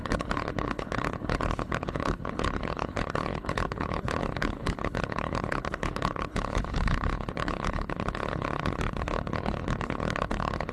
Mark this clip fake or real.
fake